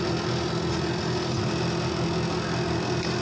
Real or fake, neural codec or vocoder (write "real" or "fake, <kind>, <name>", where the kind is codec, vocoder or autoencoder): real